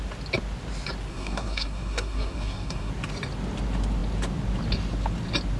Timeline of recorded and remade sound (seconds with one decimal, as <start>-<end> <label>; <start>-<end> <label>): 0.0-1.1 recorded; 1.1-2.9 remade; 2.9-5.6 recorded